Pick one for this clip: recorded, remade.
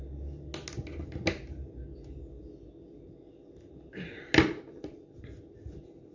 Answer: recorded